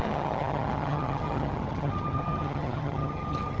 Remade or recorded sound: remade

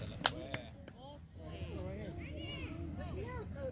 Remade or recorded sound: recorded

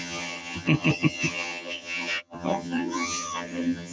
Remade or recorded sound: remade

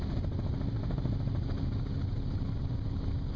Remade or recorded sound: recorded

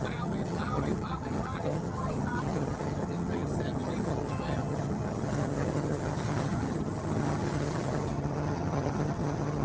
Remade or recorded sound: remade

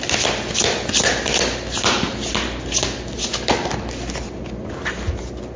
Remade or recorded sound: recorded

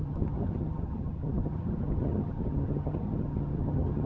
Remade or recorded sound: remade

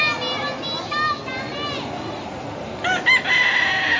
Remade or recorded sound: recorded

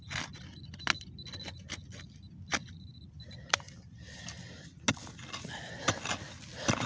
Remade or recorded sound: recorded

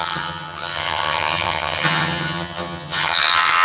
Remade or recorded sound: remade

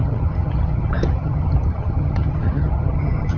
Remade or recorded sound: remade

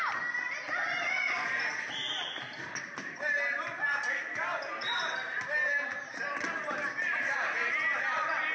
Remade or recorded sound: recorded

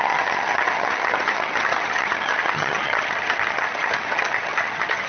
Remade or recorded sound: remade